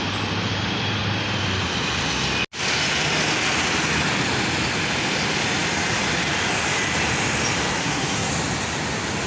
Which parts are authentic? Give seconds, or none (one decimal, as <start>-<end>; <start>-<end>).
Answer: 0.0-7.8; 8.3-9.3